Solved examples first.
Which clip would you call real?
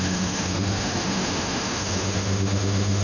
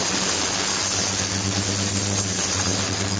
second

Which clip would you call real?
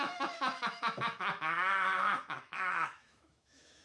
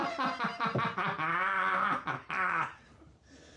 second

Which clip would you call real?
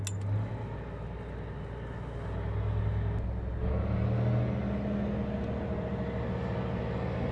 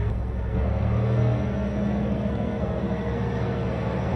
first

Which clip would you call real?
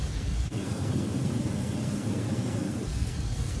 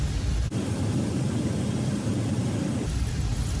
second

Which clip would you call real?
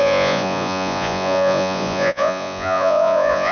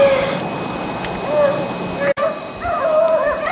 second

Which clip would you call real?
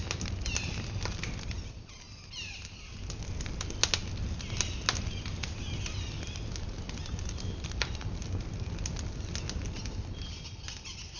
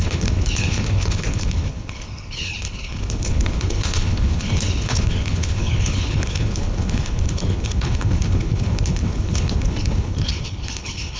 first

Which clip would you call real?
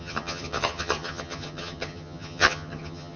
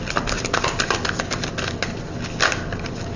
second